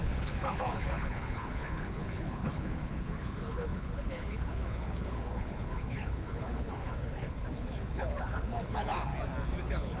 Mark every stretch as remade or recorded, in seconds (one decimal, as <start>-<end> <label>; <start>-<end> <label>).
0.0-9.1 remade; 9.1-9.6 recorded; 9.6-10.0 remade